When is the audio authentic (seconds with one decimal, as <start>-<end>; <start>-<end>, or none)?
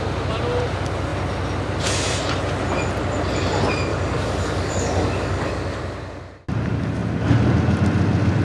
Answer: 0.0-3.9; 5.5-8.4